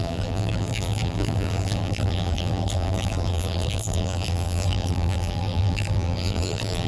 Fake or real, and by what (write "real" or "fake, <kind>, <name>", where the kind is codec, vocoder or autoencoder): fake, vocoder, BigVGAN v2